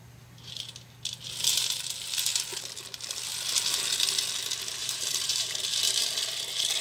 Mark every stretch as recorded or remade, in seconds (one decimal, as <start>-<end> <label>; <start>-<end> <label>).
0.0-4.8 recorded; 4.8-5.6 remade; 5.6-6.8 recorded